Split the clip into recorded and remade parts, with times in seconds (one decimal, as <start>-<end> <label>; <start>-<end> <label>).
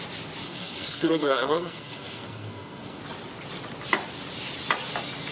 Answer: 0.0-0.4 recorded; 0.4-3.0 remade; 3.0-5.3 recorded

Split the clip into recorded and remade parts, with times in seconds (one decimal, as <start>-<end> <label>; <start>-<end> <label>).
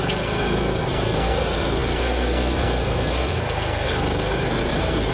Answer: 0.0-5.1 remade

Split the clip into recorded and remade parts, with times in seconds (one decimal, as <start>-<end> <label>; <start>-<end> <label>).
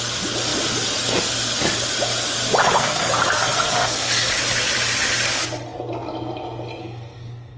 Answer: 0.0-2.6 recorded; 2.6-4.3 remade; 4.3-6.8 recorded; 6.8-7.6 remade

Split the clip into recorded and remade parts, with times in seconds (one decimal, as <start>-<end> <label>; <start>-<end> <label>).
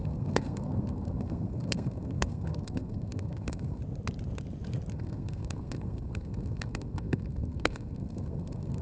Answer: 0.0-3.8 remade; 3.8-4.9 recorded; 4.9-8.8 remade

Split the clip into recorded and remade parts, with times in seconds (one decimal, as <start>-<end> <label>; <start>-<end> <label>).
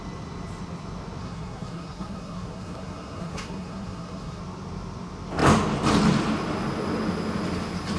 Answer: 0.0-1.2 recorded; 1.2-4.4 remade; 4.4-8.0 recorded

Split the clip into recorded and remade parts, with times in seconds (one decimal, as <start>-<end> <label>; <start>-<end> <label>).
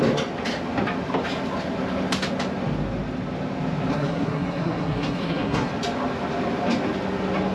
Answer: 0.0-3.9 recorded; 3.9-5.7 remade; 5.7-7.5 recorded